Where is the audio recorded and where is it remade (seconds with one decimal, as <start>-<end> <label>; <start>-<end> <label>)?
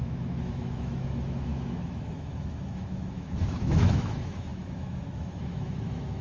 0.0-6.2 remade